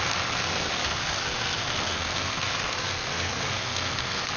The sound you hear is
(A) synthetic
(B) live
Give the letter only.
A